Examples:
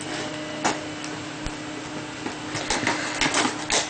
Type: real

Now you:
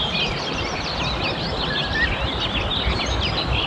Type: real